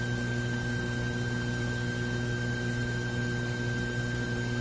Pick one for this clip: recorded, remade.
recorded